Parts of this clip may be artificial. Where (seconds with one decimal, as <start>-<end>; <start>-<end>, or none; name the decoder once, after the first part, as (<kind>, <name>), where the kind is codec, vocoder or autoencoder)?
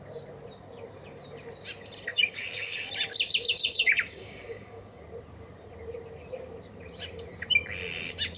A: 2.1-2.9 (codec, DAC); 3.5-5.0